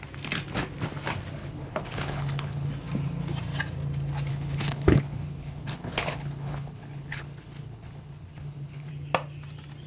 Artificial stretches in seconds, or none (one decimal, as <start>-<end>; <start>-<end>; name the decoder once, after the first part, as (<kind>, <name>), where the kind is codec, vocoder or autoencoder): 1.4-2.7 (codec, HILCodec); 4.3-8.9